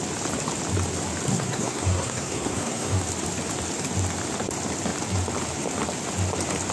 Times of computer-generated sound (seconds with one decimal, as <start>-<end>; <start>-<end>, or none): 1.3-3.0